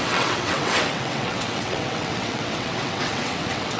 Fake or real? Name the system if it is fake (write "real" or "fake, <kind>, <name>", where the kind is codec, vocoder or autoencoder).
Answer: fake, vocoder, WaveNeXt